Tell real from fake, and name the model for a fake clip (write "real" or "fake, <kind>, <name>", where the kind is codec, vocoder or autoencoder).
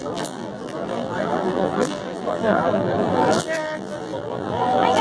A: fake, vocoder, BigVGAN v2